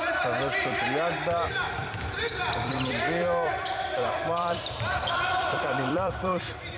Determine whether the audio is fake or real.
fake